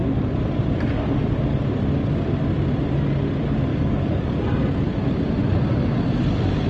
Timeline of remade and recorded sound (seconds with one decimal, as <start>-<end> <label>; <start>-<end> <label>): 0.0-3.7 recorded; 3.7-4.3 remade; 4.3-6.7 recorded